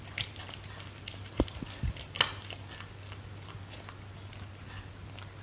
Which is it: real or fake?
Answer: real